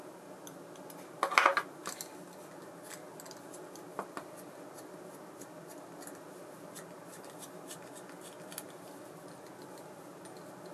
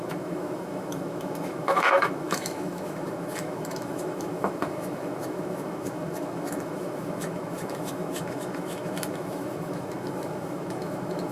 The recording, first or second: first